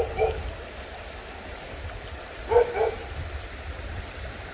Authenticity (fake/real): real